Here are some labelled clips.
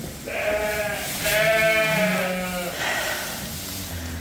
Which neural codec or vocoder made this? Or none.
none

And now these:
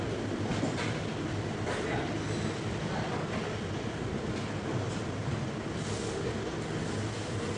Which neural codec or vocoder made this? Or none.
none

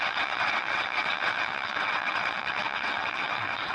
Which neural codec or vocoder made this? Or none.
vocoder, WaveNeXt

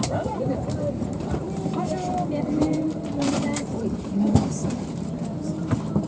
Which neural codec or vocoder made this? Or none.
vocoder, BigVGAN v2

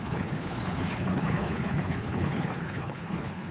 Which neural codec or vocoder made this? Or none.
codec, HILCodec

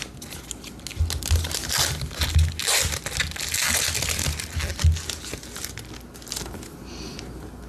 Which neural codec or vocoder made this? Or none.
none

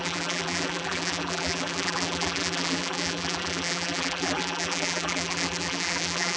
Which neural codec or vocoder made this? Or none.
vocoder, BigVGAN v2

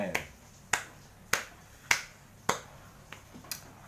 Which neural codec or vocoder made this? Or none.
none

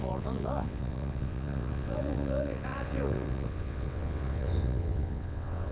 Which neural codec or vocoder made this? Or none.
vocoder, WaveNeXt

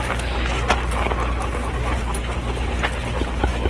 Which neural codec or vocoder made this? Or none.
none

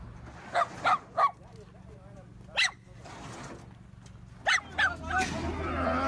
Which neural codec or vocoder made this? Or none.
none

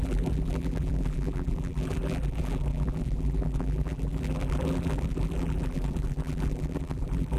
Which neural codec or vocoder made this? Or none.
vocoder, BigVGAN v2